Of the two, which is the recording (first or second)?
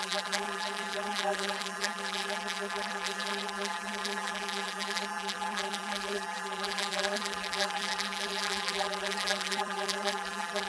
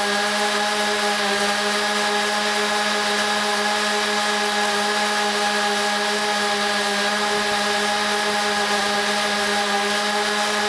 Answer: second